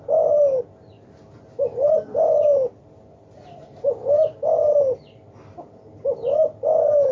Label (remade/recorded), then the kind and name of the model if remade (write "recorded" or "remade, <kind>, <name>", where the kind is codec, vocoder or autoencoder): recorded